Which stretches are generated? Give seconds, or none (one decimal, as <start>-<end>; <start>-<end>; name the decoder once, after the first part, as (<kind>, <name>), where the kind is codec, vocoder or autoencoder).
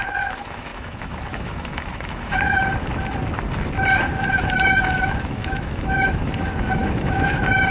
0.0-2.6 (autoencoder, DAC-VAE); 4.3-7.7